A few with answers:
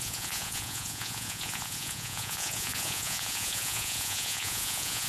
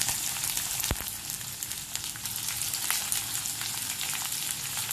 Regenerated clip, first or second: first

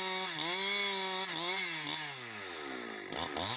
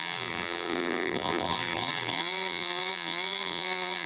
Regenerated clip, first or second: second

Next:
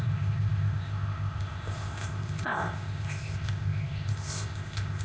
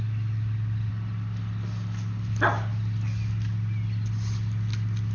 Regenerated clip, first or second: first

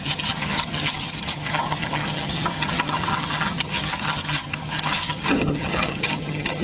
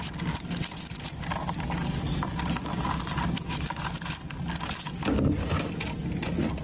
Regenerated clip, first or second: first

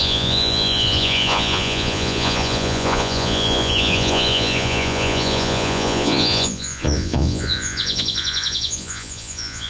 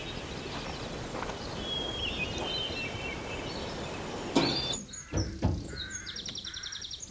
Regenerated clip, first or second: first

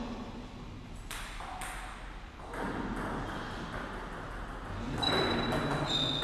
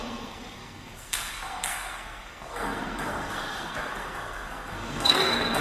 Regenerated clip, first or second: second